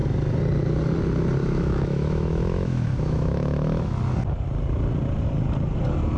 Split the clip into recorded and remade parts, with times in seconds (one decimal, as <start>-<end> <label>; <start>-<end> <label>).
0.0-1.4 recorded; 1.4-3.9 remade; 3.9-6.2 recorded